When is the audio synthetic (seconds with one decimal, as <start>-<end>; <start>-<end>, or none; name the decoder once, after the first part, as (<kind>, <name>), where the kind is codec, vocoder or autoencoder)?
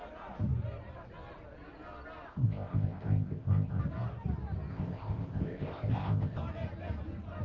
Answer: 2.3-3.8 (codec, ZipCodec); 4.7-6.4